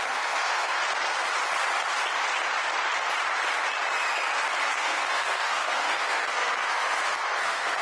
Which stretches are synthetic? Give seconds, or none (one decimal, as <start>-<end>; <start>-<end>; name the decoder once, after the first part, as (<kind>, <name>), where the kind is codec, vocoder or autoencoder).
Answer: 0.0-0.8 (codec, SNAC); 4.7-7.8